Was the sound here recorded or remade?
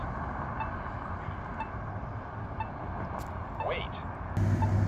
recorded